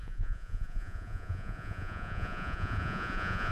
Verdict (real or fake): fake